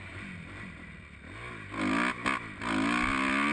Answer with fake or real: real